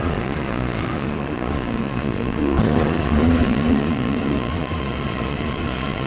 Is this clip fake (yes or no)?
yes